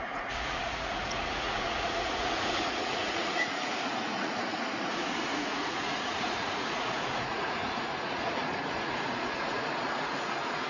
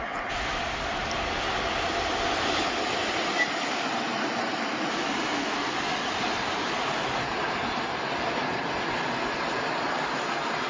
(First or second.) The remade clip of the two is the first